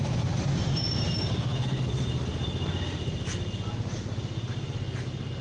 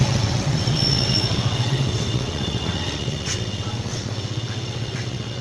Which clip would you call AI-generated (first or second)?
second